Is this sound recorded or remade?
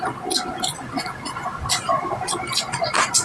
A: recorded